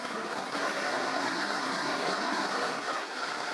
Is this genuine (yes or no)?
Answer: no